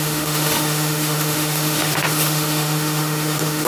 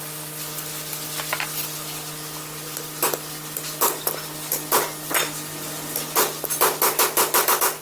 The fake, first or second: first